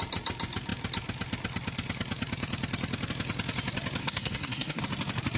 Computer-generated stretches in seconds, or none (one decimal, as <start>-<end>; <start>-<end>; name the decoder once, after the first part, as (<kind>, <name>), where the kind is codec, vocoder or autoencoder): 4.0-4.8 (codec, SNAC)